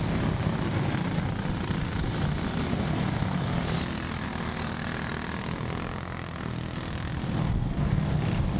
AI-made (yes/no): no